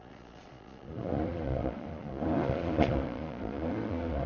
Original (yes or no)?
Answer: no